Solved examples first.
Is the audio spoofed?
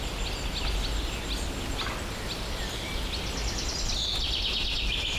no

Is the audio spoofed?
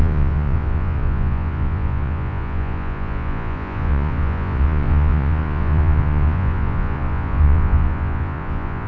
yes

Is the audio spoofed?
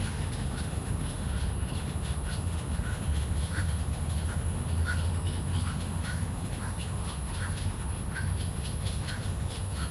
yes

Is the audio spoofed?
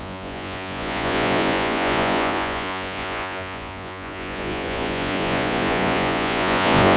yes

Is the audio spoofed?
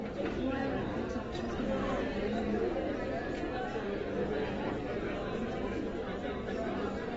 no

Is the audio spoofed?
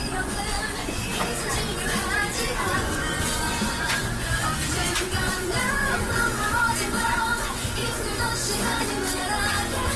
yes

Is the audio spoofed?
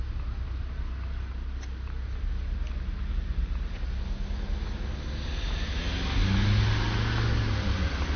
no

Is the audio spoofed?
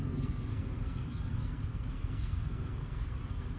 yes